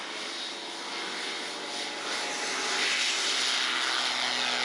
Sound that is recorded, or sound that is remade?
recorded